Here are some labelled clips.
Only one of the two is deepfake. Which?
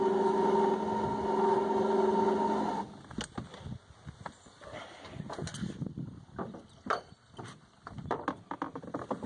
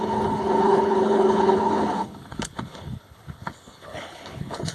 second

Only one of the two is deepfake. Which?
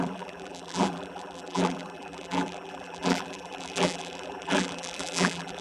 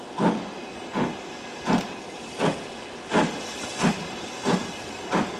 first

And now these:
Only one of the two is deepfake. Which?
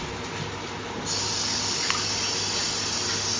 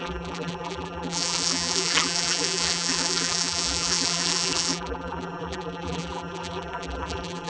second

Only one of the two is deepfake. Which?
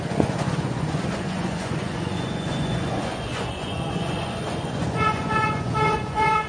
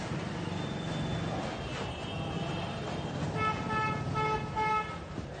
first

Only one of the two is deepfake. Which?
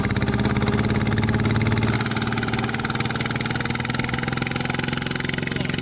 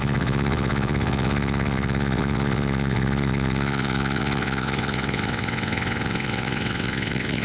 second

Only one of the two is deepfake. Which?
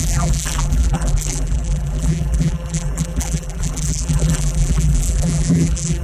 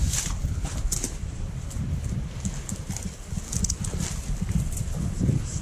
first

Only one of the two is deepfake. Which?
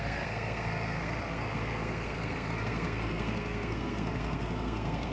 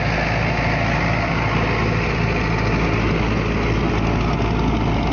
first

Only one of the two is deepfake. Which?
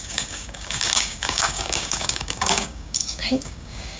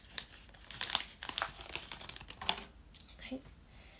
first